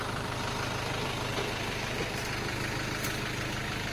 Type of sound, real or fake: fake